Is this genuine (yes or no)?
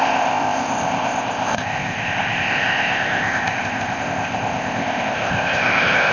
no